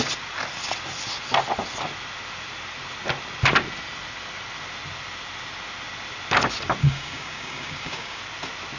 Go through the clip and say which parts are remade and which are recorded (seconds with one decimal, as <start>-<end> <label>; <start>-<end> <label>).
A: 0.0-6.8 recorded; 6.8-8.2 remade; 8.2-8.8 recorded